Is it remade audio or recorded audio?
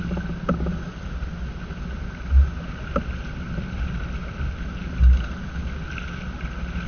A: recorded